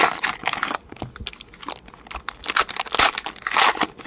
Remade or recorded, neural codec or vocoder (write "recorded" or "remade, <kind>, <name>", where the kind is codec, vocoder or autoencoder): recorded